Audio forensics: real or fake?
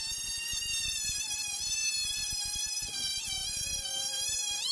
real